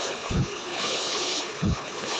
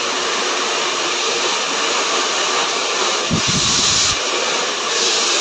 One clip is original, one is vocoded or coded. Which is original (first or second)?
second